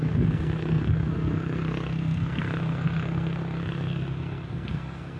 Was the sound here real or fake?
fake